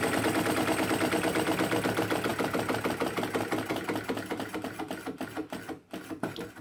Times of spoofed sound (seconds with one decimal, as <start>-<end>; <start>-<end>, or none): none